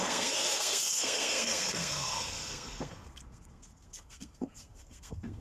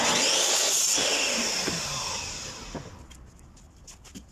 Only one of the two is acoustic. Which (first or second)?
second